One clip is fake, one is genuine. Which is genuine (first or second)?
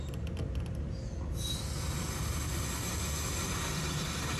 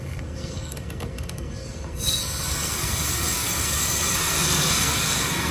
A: first